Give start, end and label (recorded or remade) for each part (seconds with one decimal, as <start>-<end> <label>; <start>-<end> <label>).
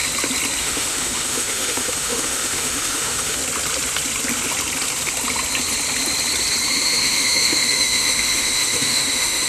0.0-0.6 recorded; 0.6-3.4 remade; 3.4-6.7 recorded; 6.7-9.5 remade